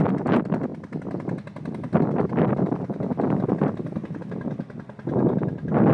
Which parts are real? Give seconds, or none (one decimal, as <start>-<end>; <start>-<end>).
0.0-5.9